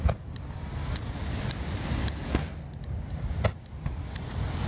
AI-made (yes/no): no